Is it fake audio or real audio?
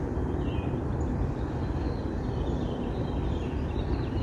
real